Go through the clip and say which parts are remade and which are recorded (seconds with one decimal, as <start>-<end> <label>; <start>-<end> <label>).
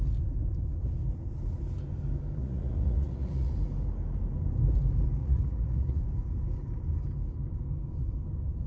0.0-2.4 recorded; 2.4-3.5 remade; 3.5-5.2 recorded; 5.2-6.0 remade; 6.0-8.7 recorded